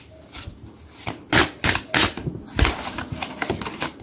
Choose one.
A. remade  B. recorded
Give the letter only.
B